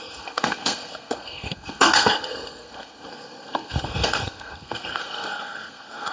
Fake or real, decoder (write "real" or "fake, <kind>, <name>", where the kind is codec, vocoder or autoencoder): fake, codec, SNAC